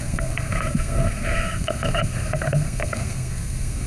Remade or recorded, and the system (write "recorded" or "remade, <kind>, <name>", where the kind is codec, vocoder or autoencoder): remade, codec, SNAC